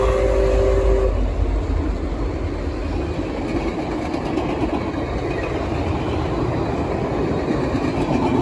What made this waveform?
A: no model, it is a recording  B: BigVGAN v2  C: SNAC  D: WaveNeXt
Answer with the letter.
A